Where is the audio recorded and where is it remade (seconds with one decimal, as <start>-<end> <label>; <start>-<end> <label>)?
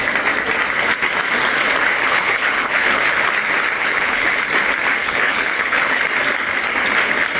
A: 0.0-2.1 recorded; 2.1-3.0 remade; 3.0-3.8 recorded; 3.8-4.4 remade; 4.4-5.0 recorded; 5.0-6.0 remade; 6.0-7.4 recorded